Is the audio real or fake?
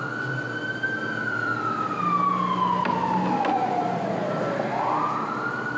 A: real